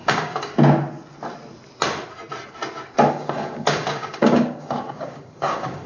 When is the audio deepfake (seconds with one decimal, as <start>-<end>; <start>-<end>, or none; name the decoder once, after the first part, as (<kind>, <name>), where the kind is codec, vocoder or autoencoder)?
0.0-0.5 (codec, DAC); 3.1-5.9